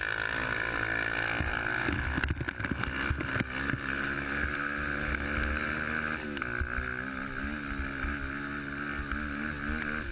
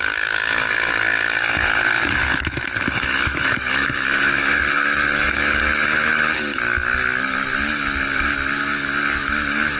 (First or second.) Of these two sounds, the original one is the first